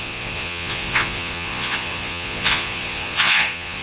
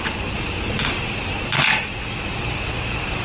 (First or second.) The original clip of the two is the second